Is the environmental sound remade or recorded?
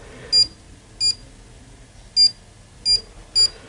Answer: recorded